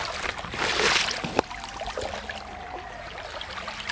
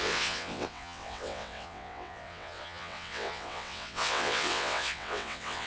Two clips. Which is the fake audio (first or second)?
second